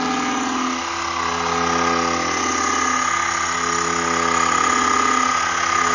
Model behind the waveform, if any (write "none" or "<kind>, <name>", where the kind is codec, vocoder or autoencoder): none